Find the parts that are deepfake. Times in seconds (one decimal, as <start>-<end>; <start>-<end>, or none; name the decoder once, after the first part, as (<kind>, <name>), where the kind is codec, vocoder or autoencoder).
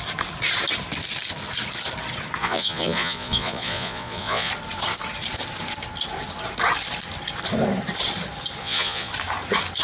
2.4-4.5 (vocoder, Vocos); 8.6-9.1